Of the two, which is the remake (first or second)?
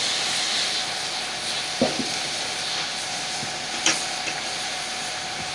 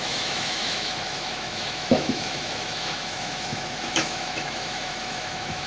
second